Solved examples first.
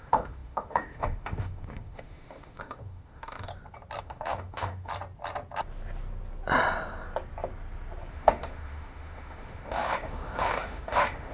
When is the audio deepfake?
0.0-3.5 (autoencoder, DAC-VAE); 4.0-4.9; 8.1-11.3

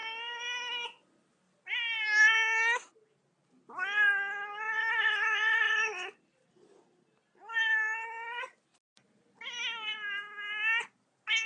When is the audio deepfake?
none

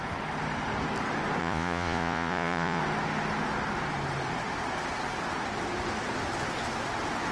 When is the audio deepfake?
1.4-2.8 (vocoder, Vocos)

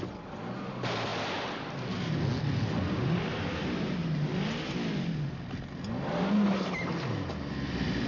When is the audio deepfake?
none

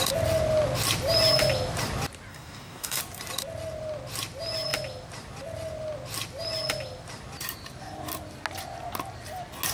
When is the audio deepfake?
2.3-3.0 (codec, DAC)

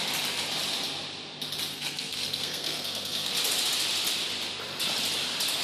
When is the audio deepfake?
1.7-3.3 (codec, SNAC)

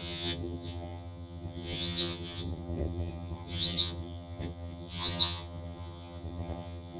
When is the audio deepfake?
0.0-7.0 (vocoder, HiFi-GAN)

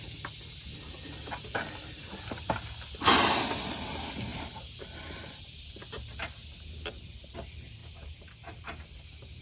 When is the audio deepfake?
4.3-5.7 (vocoder, BigVGAN v2); 7.8-9.4